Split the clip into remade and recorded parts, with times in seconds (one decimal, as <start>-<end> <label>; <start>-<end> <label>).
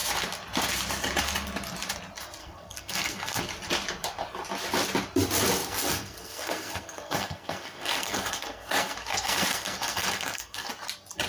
0.0-2.4 recorded; 2.4-3.4 remade; 3.4-5.6 recorded; 5.6-10.7 remade; 10.7-11.3 recorded